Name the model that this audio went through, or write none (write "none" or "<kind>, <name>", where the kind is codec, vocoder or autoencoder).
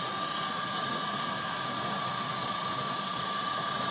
none